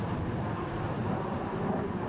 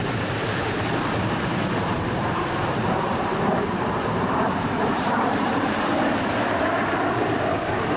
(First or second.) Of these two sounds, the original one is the first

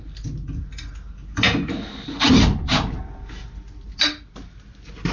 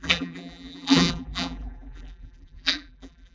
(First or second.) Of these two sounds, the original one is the first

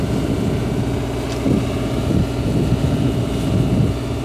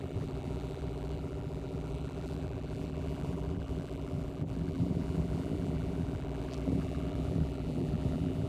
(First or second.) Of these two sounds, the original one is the first